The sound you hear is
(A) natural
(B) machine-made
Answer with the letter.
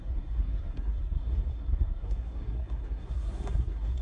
B